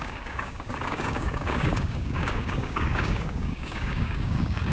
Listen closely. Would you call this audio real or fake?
fake